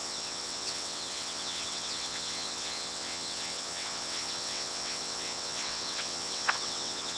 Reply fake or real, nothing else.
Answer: fake